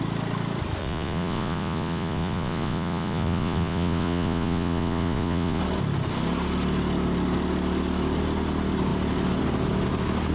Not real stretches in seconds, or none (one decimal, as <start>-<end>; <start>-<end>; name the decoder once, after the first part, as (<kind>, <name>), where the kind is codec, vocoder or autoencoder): 0.8-5.6 (vocoder, Vocos)